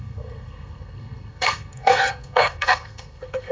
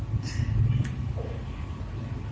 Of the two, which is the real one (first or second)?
second